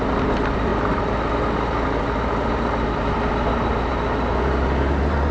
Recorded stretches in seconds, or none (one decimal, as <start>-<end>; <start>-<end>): 0.0-5.3